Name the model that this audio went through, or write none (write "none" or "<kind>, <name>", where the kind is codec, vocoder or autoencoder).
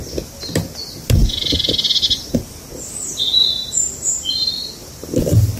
none